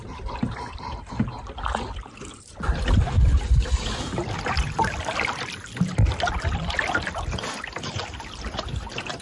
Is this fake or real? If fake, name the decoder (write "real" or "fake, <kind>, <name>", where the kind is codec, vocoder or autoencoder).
real